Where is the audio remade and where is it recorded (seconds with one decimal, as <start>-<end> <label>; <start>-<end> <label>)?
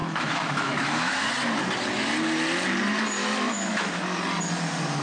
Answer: 0.0-1.3 remade; 1.3-3.2 recorded; 3.2-3.9 remade; 3.9-5.0 recorded